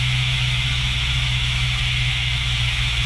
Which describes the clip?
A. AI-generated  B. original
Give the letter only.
A